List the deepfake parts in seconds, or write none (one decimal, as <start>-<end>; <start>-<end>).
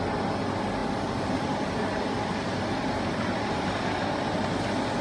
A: 0.8-3.8